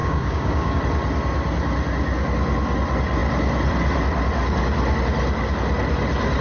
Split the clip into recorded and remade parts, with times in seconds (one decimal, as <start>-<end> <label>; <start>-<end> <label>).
0.0-0.8 remade; 0.8-6.4 recorded